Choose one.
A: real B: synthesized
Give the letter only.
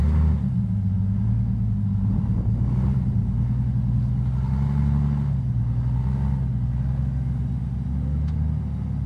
A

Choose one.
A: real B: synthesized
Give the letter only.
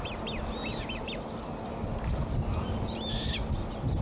A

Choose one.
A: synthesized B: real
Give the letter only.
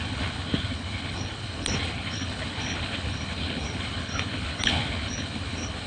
A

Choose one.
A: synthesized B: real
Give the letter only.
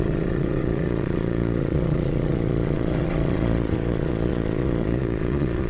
A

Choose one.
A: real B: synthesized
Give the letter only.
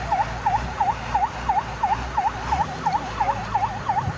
A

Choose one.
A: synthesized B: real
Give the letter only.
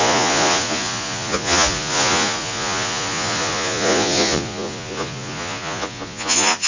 A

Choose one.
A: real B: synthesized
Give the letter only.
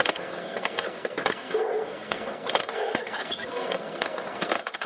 B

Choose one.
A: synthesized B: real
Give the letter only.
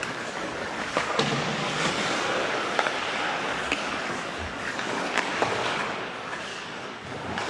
A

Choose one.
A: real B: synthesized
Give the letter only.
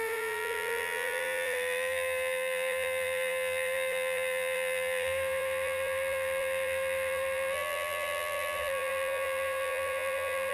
B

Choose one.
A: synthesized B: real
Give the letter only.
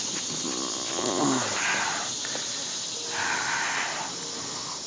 B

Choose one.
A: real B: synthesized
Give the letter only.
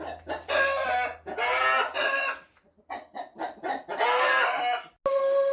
A